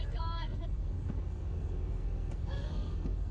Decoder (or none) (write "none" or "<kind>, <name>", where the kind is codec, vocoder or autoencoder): codec, SNAC